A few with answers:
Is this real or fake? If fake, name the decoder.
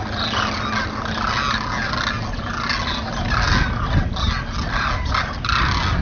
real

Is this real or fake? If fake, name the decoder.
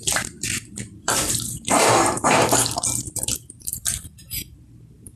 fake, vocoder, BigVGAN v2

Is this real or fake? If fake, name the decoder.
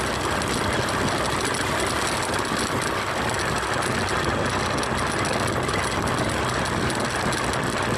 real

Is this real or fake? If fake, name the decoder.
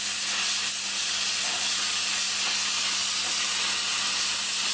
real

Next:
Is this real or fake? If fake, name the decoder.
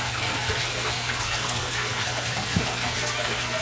fake, codec, SNAC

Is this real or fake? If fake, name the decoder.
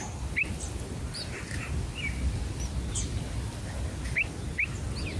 real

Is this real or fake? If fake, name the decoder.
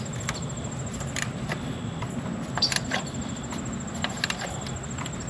real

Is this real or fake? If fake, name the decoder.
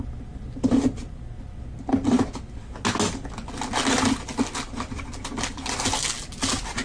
real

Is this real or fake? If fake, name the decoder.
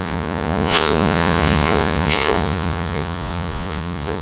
fake, vocoder, Vocos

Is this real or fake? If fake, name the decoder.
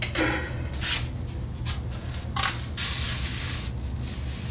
real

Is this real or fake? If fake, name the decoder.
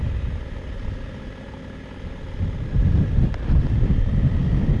real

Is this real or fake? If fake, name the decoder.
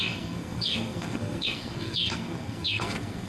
fake, codec, SNAC